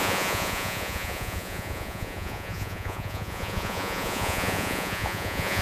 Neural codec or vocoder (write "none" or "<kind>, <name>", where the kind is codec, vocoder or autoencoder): vocoder, Vocos